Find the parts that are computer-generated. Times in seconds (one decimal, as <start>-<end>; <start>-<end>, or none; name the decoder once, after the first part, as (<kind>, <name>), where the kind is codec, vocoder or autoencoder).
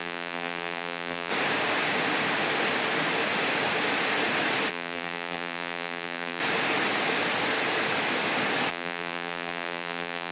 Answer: 0.0-1.3 (vocoder, BigVGAN v2); 4.7-6.4; 8.7-10.3